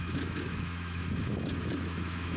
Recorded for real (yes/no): no